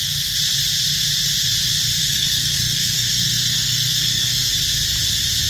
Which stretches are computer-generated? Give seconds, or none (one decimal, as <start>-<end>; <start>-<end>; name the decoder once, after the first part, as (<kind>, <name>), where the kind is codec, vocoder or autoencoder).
2.0-4.5 (codec, SNAC)